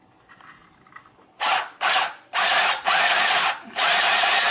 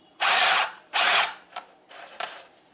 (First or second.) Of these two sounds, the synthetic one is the second